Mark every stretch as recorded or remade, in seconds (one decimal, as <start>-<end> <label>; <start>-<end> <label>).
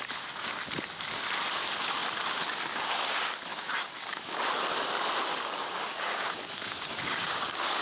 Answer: 0.0-3.5 recorded; 3.5-4.4 remade; 4.4-5.3 recorded; 5.3-7.8 remade